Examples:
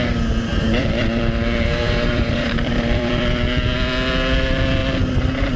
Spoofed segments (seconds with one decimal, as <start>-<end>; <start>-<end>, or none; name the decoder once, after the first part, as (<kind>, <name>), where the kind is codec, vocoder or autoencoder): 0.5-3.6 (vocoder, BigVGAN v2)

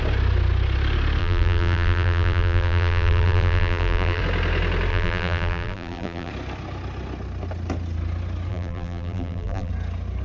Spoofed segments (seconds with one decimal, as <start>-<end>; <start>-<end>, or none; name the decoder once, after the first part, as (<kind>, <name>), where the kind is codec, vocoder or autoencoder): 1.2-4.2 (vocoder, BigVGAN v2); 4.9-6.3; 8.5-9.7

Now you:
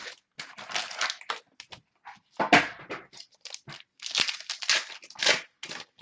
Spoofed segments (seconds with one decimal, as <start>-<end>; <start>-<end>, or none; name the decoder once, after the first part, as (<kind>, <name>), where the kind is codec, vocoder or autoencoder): none

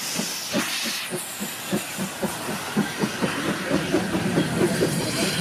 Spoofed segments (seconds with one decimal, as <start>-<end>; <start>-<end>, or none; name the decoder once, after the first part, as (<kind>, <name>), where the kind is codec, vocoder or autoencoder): 0.0-0.4 (vocoder, BigVGAN v2); 3.6-5.4

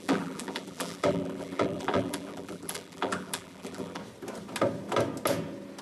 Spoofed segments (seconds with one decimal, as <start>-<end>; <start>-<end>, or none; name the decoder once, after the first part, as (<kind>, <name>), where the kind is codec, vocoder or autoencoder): 0.0-4.0 (vocoder, BigVGAN v2)